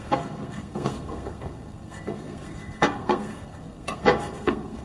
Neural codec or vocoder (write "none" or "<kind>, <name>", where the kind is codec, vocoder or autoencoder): codec, SNAC